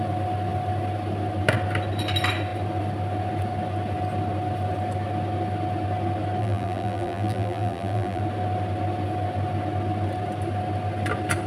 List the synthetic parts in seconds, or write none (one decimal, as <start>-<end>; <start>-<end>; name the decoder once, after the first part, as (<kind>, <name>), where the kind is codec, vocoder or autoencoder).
6.4-8.2 (vocoder, BigVGAN v2)

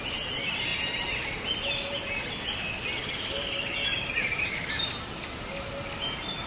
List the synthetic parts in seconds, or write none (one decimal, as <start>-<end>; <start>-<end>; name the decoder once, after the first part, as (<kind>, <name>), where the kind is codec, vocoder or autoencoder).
none

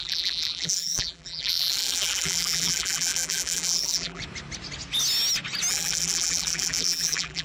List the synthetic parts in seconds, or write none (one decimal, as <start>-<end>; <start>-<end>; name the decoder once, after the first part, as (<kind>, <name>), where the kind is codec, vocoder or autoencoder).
0.0-4.2 (vocoder, BigVGAN v2); 5.7-7.4